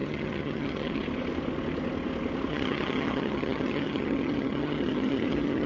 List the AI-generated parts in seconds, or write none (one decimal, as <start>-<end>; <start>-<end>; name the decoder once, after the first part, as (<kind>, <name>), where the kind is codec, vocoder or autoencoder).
0.0-1.0 (vocoder, HiFi-GAN); 2.5-5.7